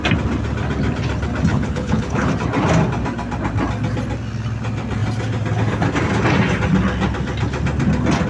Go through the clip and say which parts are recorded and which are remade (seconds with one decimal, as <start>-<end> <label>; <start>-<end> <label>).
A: 0.0-1.5 recorded; 1.5-2.3 remade; 2.3-8.3 recorded